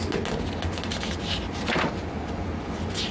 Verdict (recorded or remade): recorded